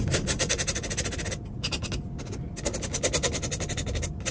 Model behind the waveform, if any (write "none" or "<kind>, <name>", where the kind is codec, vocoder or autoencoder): none